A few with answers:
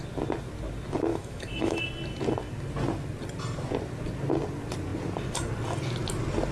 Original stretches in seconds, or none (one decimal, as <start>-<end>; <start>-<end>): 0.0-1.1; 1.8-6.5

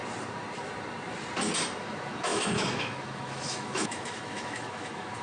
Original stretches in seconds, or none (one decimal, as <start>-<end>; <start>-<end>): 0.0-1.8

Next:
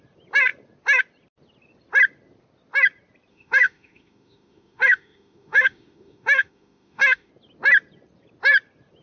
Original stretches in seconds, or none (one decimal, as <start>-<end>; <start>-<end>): 0.0-3.3; 7.3-9.0